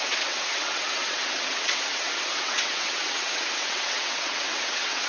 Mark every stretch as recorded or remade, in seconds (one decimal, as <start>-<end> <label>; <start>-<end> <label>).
0.0-5.1 remade